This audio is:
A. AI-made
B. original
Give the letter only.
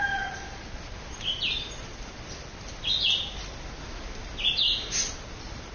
B